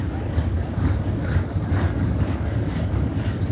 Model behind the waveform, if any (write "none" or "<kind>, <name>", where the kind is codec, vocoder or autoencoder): codec, DAC